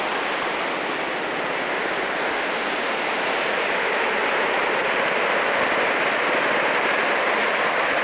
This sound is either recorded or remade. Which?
recorded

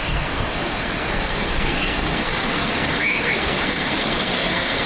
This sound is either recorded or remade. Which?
remade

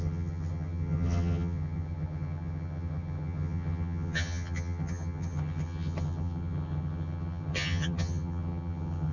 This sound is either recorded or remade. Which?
remade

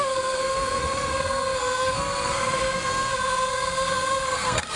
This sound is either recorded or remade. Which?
remade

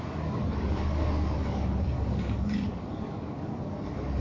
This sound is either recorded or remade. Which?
remade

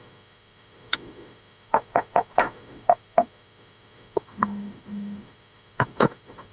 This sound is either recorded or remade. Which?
remade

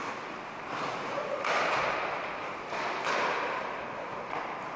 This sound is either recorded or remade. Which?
recorded